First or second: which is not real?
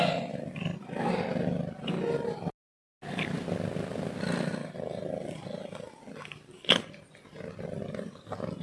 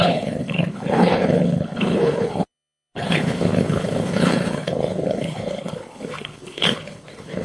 second